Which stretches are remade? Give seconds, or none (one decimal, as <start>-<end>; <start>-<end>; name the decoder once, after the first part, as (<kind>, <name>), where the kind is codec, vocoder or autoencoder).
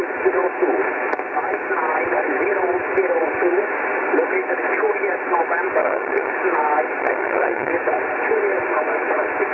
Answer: 5.8-6.3 (vocoder, HiFi-GAN); 7.0-7.7